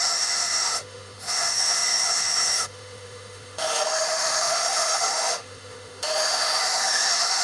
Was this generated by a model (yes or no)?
yes